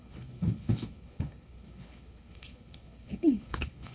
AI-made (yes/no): yes